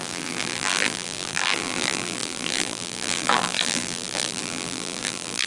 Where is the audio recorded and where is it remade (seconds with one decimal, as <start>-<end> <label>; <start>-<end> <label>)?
0.0-5.5 remade